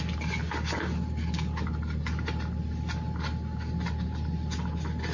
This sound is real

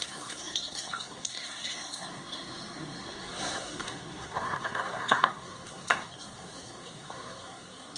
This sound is fake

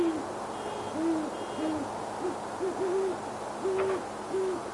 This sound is real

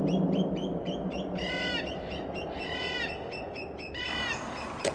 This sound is real